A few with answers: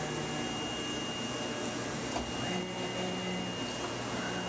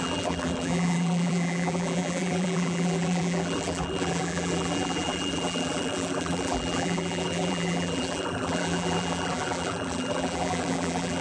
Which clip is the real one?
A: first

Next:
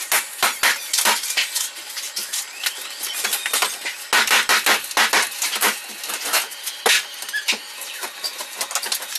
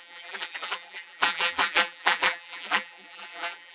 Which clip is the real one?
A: first